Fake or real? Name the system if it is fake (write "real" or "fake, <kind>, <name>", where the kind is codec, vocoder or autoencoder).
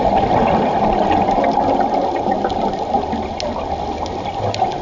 real